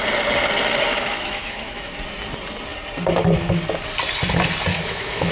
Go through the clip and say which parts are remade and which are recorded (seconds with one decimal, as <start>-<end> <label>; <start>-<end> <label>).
0.0-0.9 recorded; 0.9-1.9 remade; 1.9-4.7 recorded; 4.7-5.3 remade